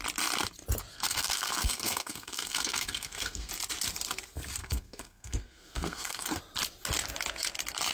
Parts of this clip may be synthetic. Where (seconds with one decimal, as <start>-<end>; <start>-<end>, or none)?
0.9-3.5; 4.6-6.4

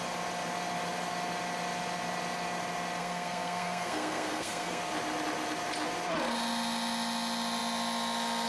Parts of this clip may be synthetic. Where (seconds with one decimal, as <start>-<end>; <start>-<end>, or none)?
3.0-4.8

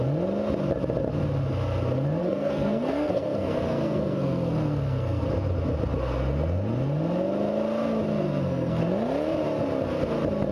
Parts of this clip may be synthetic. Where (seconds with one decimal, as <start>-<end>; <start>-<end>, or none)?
2.2-5.2; 8.1-8.8

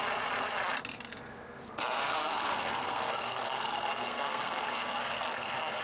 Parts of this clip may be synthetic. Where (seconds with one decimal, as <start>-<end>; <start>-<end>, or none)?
2.0-5.8

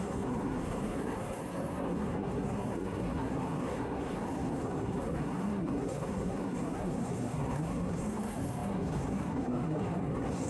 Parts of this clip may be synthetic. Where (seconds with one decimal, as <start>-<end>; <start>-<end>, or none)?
0.0-10.5